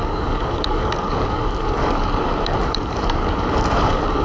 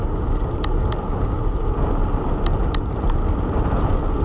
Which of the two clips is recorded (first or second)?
second